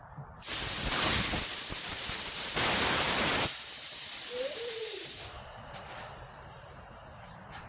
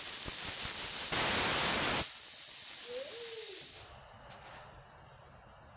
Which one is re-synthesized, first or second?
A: first